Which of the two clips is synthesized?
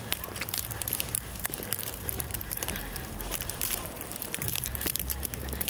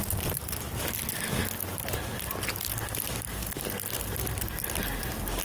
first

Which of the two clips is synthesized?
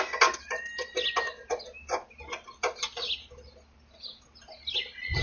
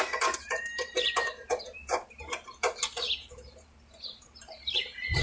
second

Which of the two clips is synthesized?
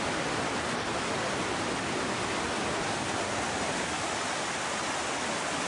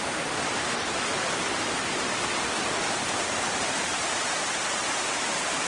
second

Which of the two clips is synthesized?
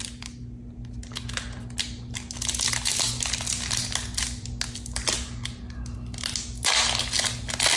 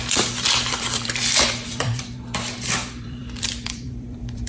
second